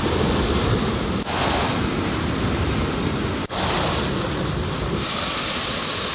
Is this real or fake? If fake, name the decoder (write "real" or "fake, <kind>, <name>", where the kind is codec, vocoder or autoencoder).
real